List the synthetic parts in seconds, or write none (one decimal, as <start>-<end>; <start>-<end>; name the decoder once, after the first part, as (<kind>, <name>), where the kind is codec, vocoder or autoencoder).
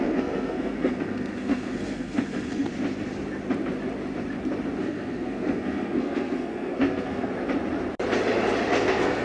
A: 0.0-2.7 (codec, SNAC); 4.8-7.3; 8.7-9.2